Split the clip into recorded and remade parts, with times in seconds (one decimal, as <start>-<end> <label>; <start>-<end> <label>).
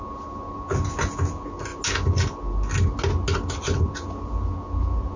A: 0.0-5.2 recorded